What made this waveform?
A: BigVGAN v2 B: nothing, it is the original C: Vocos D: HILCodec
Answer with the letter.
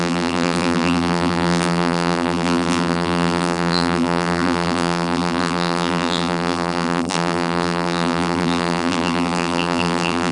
A